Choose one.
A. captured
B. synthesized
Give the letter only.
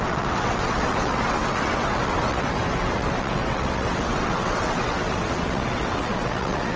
B